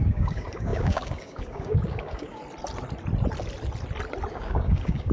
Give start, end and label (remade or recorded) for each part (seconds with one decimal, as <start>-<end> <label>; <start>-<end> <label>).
0.0-2.4 remade; 2.4-4.3 recorded; 4.3-5.1 remade